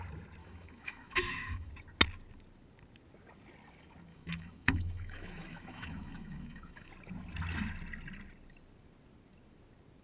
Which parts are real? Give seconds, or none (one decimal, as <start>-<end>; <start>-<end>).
0.0-0.4; 1.7-4.1; 6.9-10.0

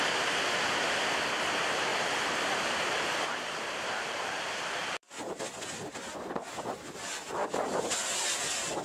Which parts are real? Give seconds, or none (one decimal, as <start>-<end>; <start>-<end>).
0.0-1.9; 5.4-8.8

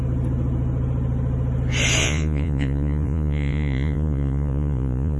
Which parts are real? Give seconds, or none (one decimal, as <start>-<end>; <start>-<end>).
0.0-2.0

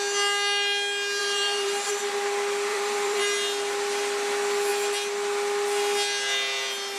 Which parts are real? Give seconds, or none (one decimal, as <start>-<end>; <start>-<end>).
0.0-1.2; 1.9-2.7; 3.2-7.0

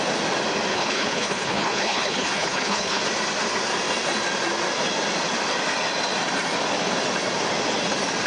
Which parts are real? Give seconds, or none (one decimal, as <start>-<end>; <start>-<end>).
0.0-0.7; 3.0-8.3

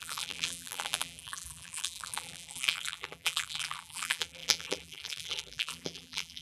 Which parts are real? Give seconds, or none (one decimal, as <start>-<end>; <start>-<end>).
none

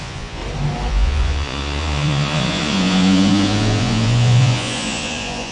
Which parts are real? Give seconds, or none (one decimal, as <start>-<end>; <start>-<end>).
0.4-0.9

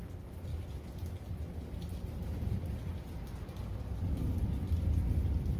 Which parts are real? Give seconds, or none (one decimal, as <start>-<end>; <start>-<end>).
0.0-5.6